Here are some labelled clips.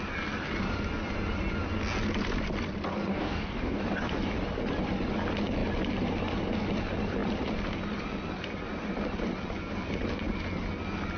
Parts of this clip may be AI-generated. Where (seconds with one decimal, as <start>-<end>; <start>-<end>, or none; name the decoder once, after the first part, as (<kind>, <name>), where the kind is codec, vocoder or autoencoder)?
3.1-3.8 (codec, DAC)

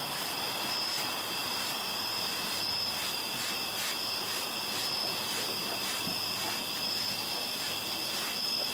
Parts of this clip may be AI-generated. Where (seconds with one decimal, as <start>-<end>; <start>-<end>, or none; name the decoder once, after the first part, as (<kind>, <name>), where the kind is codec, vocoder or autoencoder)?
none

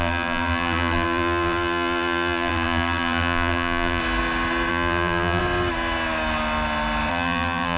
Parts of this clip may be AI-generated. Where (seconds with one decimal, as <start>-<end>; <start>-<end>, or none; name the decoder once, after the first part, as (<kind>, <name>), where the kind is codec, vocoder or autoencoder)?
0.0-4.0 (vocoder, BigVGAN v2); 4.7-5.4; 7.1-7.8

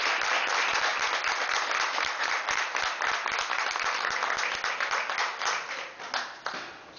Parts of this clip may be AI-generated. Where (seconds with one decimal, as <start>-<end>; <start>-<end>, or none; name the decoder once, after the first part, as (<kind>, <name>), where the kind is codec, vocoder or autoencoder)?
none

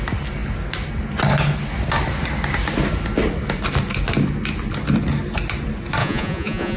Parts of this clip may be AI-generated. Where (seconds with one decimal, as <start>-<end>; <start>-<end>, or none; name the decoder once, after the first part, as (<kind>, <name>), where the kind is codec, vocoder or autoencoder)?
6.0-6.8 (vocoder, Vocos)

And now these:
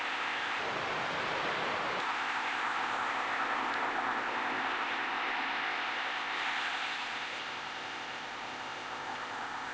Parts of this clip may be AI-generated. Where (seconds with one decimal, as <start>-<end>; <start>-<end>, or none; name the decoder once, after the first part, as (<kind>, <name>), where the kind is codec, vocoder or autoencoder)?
0.0-0.6 (codec, ZipCodec); 2.0-9.7

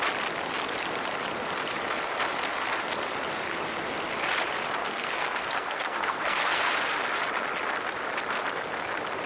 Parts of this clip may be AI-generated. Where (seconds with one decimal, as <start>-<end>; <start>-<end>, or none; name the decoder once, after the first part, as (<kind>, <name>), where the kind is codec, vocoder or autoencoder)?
4.8-6.7 (codec, SNAC)

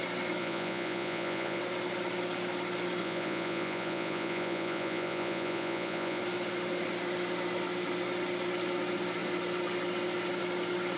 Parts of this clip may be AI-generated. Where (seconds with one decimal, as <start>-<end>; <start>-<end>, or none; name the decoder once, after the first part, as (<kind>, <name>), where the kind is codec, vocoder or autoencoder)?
0.4-1.6 (vocoder, Vocos); 3.0-6.2